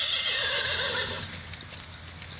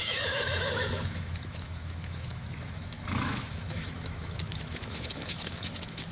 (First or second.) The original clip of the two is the first